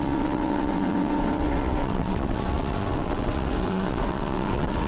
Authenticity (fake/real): fake